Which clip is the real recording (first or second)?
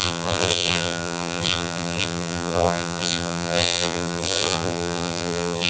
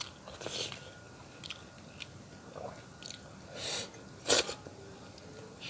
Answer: second